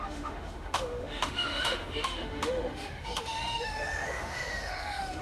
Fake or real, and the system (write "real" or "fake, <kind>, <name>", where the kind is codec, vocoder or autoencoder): fake, autoencoder, DAC-VAE